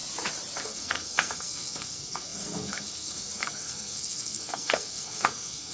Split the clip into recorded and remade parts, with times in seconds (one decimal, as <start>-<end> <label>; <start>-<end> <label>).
0.0-0.6 recorded; 0.6-5.7 remade